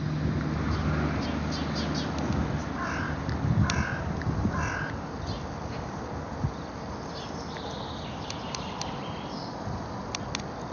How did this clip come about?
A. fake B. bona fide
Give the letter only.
B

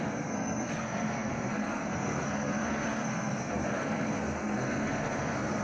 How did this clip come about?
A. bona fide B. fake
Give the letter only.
B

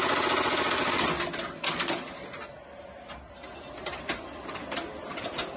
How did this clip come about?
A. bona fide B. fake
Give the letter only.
A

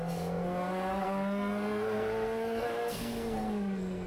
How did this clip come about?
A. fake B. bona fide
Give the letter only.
A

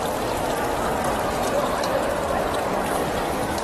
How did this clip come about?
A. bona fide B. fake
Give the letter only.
A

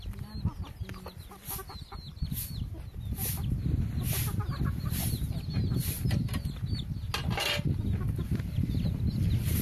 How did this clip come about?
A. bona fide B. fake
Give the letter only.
A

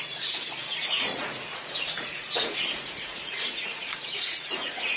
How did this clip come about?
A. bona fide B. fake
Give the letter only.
B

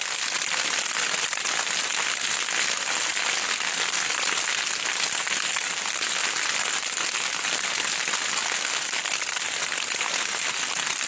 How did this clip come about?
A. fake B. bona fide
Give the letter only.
B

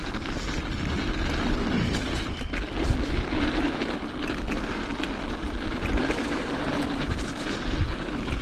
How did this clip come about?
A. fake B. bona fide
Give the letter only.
B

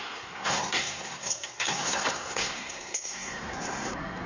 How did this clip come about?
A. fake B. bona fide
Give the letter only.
A